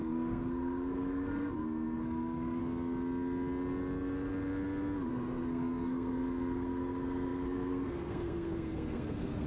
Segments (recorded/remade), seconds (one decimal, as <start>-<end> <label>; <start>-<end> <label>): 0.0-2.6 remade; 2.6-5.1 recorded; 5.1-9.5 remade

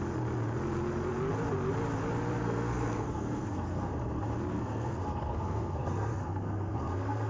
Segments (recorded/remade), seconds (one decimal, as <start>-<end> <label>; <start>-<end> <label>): 0.0-2.4 recorded; 2.4-3.9 remade; 3.9-4.5 recorded; 4.5-7.3 remade

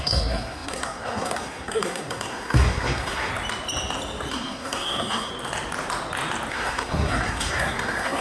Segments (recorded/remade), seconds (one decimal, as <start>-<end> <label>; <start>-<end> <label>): 0.0-3.3 remade; 3.3-4.3 recorded; 4.3-5.3 remade; 5.3-6.5 recorded; 6.5-8.2 remade

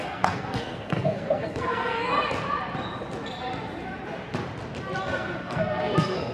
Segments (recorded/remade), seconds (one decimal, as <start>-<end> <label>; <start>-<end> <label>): 0.0-2.1 remade; 2.1-5.0 recorded; 5.0-6.3 remade

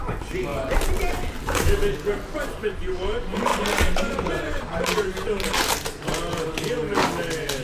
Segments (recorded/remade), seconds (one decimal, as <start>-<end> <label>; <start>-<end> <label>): 0.0-7.6 recorded

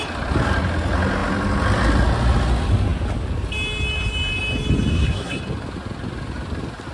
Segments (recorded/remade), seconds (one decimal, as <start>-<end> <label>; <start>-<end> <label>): 0.0-4.9 recorded; 4.9-5.4 remade; 5.4-6.9 recorded

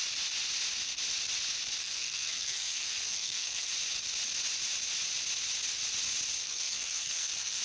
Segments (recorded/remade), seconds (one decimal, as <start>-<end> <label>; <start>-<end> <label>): 0.0-1.8 recorded; 1.8-3.7 remade; 3.7-6.4 recorded; 6.4-7.6 remade

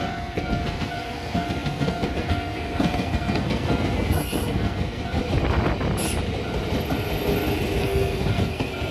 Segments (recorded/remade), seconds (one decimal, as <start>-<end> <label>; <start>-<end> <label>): 0.0-5.2 remade; 5.2-7.8 recorded; 7.8-8.9 remade